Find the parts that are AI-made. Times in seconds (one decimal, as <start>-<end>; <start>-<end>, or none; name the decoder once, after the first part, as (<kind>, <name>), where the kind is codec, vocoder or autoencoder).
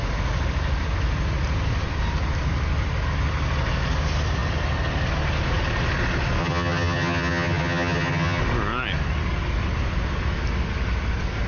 6.4-8.4 (vocoder, HiFi-GAN)